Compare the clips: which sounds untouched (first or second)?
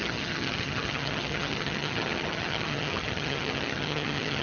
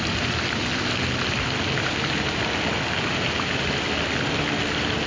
second